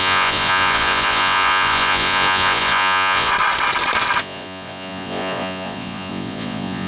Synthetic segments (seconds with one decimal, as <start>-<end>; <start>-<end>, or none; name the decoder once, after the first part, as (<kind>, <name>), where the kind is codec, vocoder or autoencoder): 0.0-3.3 (vocoder, Vocos); 4.2-6.9